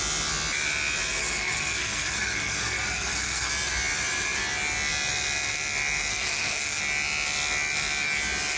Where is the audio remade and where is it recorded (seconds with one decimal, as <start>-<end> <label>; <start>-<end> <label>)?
0.0-1.2 recorded; 1.2-3.5 remade; 3.5-6.1 recorded; 6.1-6.8 remade; 6.8-8.6 recorded